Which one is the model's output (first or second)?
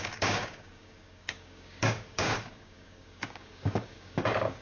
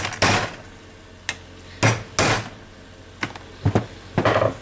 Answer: first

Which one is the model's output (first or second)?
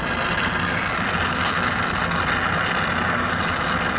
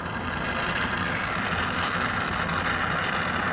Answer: second